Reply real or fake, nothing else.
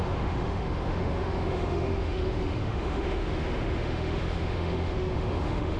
fake